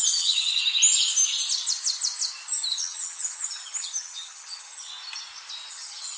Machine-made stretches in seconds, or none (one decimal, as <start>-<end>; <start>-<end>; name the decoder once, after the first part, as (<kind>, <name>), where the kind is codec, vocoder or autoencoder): 0.0-0.6 (vocoder, HiFi-GAN); 2.7-4.9; 5.7-6.2